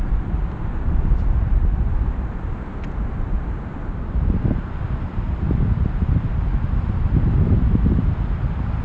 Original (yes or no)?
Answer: yes